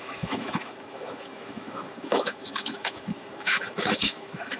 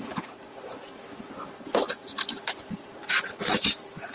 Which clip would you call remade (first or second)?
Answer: first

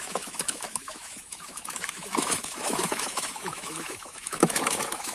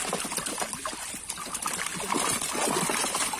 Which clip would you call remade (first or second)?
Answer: first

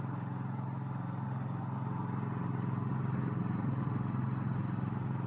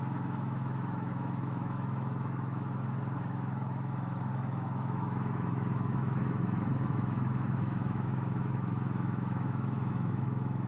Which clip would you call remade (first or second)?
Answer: second